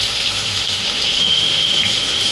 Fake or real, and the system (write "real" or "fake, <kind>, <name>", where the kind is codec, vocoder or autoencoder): fake, autoencoder, DAC-VAE